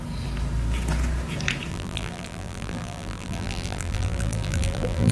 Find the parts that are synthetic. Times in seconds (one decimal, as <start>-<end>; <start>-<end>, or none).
1.7-5.1